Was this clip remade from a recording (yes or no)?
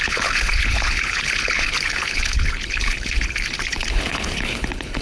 yes